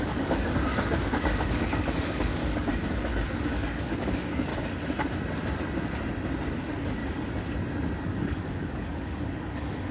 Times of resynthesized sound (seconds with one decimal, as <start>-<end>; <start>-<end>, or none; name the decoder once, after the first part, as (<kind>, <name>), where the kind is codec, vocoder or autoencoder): 0.0-2.7 (codec, DAC); 3.3-4.5; 6.5-7.0; 8.0-9.9